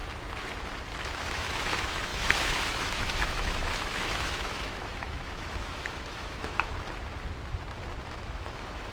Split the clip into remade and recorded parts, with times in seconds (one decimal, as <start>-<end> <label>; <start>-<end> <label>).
0.0-1.1 recorded; 1.1-6.7 remade; 6.7-8.1 recorded; 8.1-8.9 remade